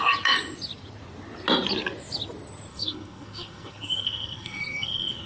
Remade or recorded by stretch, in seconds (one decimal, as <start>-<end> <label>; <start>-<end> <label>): 0.0-2.7 recorded; 2.7-5.3 remade